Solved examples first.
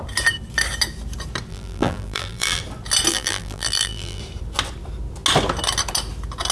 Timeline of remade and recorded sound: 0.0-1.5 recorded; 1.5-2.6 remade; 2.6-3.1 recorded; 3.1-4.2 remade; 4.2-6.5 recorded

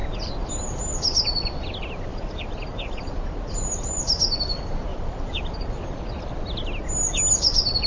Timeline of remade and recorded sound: 0.0-2.1 recorded; 2.1-3.9 remade; 3.9-4.9 recorded; 4.9-5.4 remade; 5.4-7.9 recorded

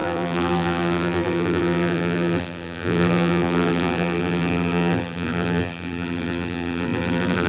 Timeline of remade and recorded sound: 0.0-7.5 remade

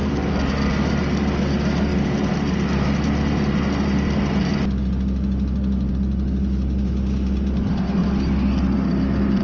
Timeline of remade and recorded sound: 0.0-9.4 recorded

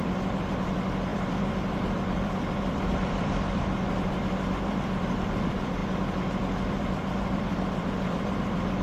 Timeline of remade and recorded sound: 0.0-5.8 remade; 5.8-6.7 recorded; 6.7-8.8 remade

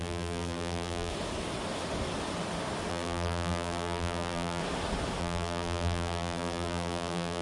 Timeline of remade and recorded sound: 0.0-1.1 remade; 1.1-2.9 recorded; 2.9-4.6 remade; 4.6-5.2 recorded; 5.2-7.4 remade